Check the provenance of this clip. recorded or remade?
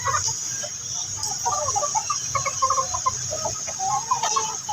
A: recorded